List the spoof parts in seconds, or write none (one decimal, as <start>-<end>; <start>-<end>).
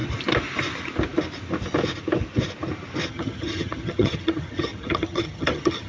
3.1-5.9